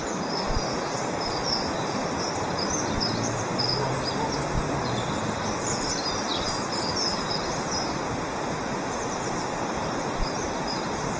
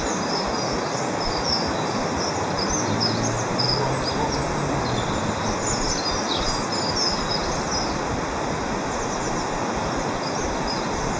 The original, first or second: second